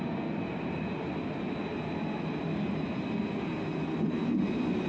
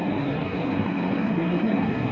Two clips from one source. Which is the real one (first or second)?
first